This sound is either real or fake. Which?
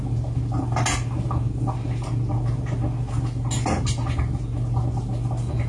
real